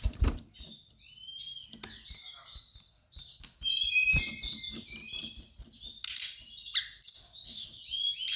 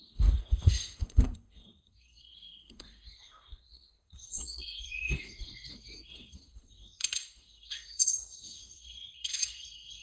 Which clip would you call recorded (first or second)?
first